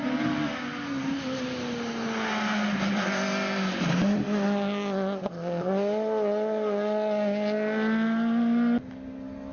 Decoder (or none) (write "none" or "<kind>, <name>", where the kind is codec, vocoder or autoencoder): none